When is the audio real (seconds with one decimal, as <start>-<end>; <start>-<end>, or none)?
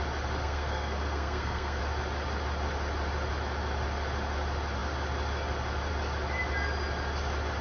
0.0-0.4; 1.8-7.6